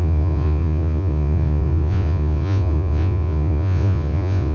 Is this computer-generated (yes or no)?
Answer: yes